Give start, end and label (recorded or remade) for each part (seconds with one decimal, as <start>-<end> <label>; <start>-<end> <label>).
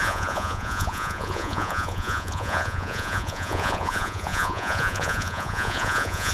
0.0-6.3 remade